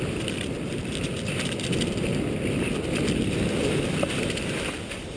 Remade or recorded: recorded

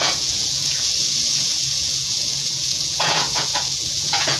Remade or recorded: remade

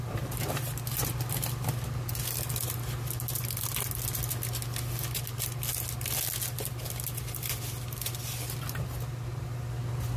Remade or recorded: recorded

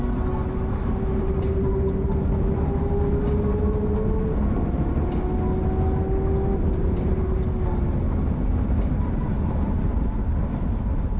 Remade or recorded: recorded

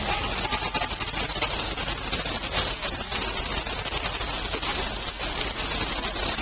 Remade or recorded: recorded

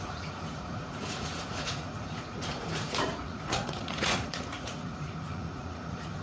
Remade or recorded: remade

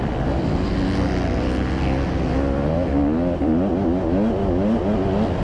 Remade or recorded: recorded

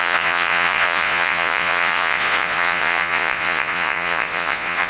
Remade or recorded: remade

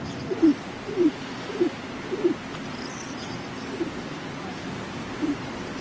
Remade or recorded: recorded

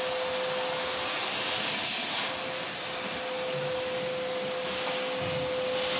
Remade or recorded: recorded